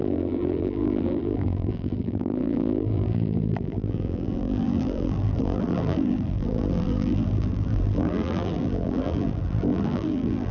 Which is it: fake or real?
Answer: fake